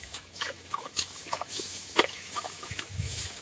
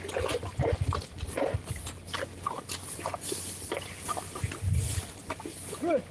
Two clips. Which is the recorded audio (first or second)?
second